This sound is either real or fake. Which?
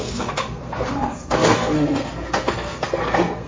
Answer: fake